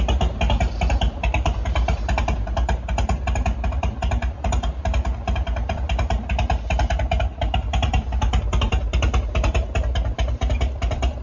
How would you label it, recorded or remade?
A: remade